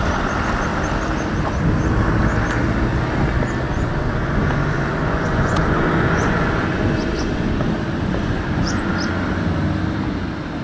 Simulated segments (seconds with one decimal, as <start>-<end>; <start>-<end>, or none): 3.7-8.9